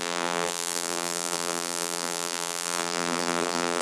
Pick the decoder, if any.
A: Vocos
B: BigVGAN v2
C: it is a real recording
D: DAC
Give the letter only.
B